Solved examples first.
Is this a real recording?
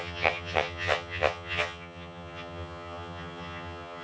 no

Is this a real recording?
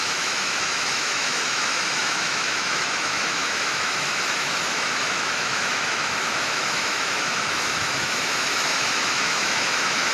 no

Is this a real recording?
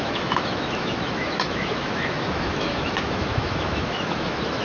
no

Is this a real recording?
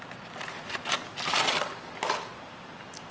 yes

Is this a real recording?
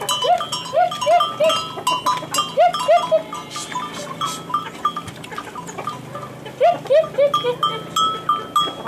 yes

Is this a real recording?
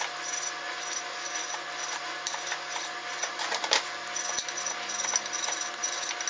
yes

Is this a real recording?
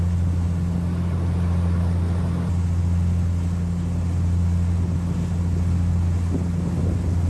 yes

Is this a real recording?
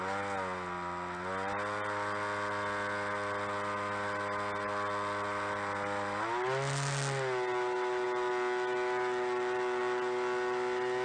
yes